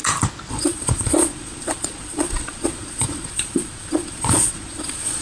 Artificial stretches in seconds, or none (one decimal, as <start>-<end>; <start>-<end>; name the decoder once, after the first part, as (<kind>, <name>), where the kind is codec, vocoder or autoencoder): 0.5-5.2 (vocoder, Vocos)